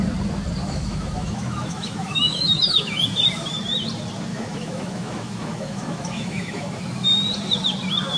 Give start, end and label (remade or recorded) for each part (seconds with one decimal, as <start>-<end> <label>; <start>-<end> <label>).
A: 0.0-0.6 recorded; 0.6-3.0 remade; 3.0-4.3 recorded; 4.3-6.8 remade; 6.8-8.2 recorded